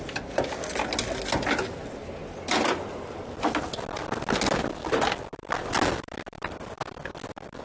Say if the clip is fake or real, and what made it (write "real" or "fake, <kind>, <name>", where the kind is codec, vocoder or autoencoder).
real